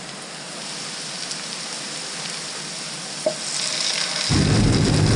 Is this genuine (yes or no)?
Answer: yes